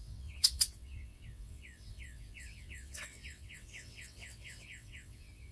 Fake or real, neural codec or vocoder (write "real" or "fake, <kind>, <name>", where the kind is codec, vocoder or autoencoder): fake, vocoder, WaveNeXt